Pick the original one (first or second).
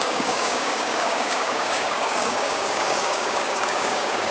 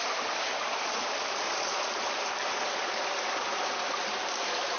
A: second